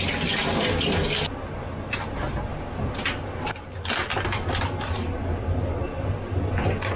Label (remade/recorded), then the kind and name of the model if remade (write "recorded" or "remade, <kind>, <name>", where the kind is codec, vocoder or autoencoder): recorded